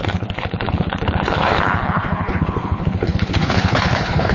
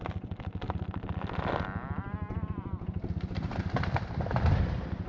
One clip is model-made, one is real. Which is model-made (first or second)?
first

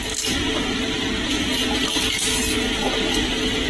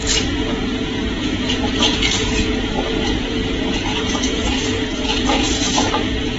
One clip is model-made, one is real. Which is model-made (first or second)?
second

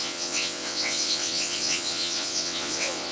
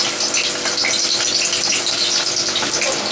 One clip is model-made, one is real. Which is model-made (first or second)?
first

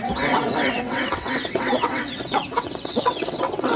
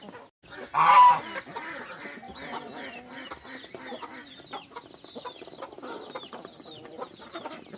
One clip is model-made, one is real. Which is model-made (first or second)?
first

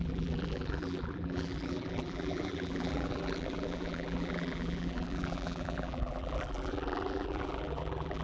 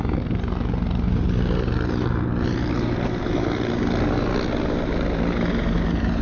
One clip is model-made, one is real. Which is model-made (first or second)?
first